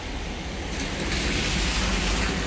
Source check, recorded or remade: recorded